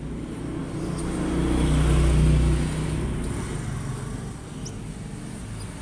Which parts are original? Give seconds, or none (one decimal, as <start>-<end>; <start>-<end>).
0.0-5.8